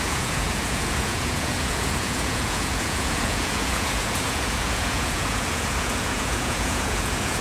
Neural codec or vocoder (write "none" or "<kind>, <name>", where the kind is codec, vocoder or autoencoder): vocoder, Vocos